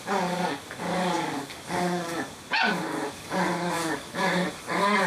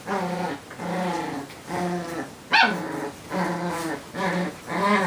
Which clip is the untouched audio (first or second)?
second